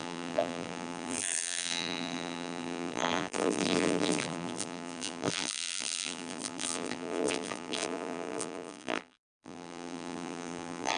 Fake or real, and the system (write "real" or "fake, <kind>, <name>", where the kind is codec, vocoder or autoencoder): fake, vocoder, BigVGAN v2